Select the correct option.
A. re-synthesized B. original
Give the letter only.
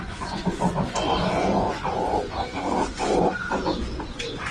A